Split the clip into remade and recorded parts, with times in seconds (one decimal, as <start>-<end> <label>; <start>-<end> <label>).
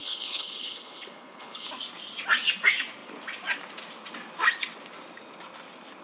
0.0-1.7 remade; 1.7-6.0 recorded